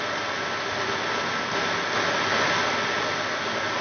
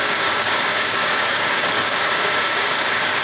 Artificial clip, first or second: second